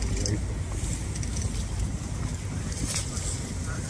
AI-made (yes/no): no